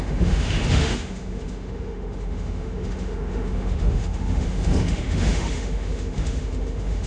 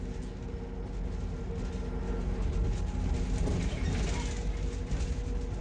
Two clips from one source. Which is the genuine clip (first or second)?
second